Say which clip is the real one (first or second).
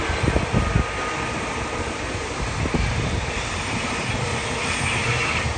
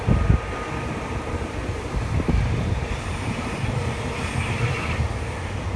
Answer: first